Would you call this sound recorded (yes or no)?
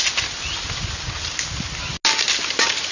yes